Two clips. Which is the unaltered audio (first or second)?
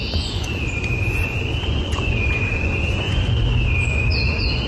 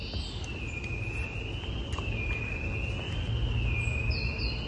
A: second